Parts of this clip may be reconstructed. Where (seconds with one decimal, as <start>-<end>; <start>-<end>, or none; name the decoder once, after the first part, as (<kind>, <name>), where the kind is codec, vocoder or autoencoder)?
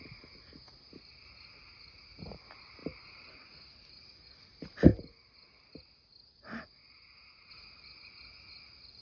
none